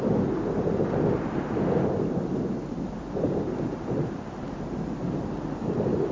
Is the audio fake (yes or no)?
no